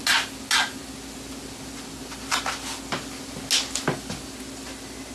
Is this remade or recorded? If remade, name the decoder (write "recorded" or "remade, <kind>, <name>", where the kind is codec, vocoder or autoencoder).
recorded